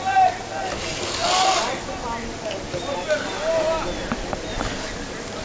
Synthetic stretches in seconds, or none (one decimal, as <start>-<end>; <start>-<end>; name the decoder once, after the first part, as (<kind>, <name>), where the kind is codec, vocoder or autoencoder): none